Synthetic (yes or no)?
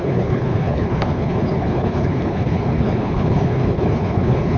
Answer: yes